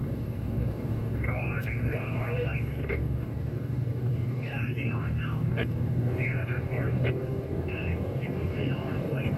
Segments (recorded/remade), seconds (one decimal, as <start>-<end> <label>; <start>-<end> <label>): 0.0-9.4 remade